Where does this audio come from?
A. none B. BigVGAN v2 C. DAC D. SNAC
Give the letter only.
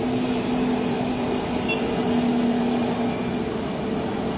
A